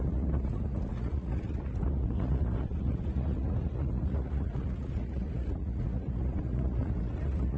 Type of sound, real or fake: fake